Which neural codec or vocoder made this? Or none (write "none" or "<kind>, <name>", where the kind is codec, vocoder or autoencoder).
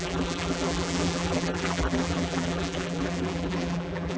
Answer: vocoder, BigVGAN v2